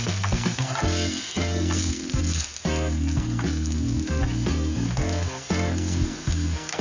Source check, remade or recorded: remade